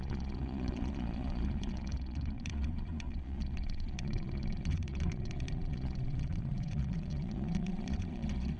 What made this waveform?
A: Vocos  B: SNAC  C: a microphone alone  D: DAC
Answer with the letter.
A